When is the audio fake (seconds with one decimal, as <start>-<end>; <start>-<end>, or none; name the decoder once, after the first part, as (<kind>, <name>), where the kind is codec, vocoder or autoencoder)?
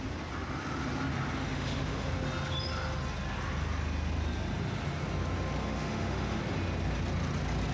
1.5-2.1 (autoencoder, DAC-VAE); 5.6-6.4